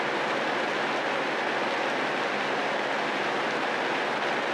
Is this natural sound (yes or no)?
yes